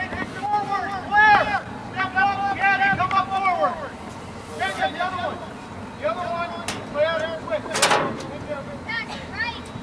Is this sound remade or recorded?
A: recorded